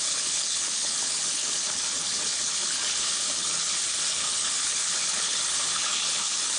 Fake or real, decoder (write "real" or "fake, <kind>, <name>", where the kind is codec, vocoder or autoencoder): fake, codec, HILCodec